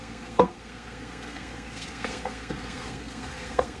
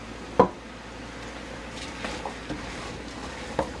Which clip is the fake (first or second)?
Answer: first